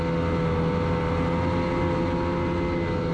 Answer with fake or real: real